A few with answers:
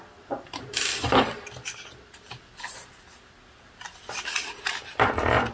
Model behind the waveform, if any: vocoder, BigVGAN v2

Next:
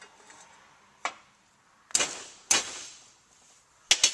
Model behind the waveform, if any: none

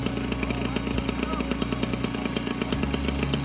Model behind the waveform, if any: none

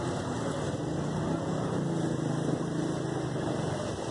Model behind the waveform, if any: none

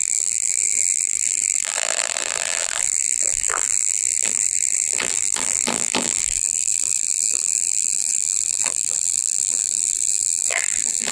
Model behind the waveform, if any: vocoder, BigVGAN v2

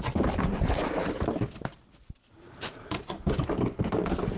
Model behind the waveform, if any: none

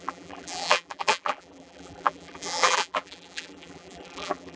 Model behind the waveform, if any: vocoder, BigVGAN v2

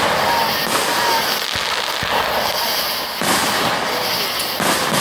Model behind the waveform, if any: none